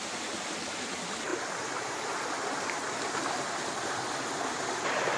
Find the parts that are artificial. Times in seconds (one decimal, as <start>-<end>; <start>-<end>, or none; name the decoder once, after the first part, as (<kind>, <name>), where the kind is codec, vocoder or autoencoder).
none